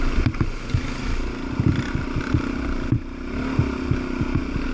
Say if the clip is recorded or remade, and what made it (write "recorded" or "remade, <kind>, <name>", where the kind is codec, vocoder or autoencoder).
recorded